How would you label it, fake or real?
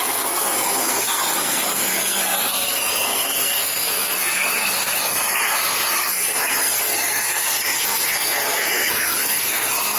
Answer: fake